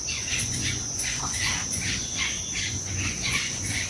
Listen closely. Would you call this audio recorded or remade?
remade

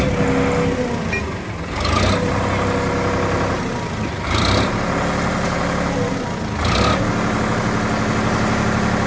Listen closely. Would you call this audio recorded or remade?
recorded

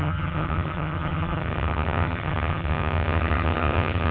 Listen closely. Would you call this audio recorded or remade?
remade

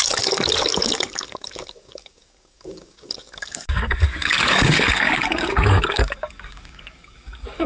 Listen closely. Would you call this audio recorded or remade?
remade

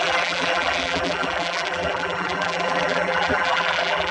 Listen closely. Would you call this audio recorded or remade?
remade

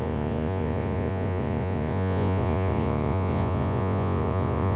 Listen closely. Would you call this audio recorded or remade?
remade